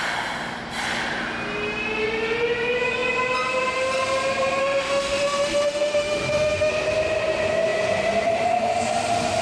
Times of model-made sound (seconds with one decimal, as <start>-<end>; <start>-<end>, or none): 4.6-6.7